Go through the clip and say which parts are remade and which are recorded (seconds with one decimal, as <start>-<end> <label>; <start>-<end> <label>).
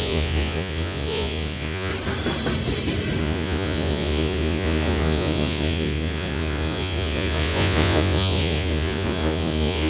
0.0-1.9 remade; 1.9-3.2 recorded; 3.2-9.9 remade